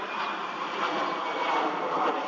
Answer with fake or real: real